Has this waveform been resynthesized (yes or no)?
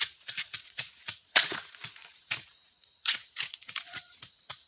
yes